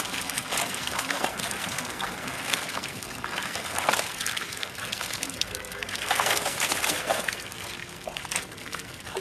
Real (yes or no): no